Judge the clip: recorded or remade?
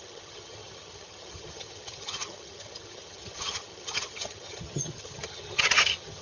remade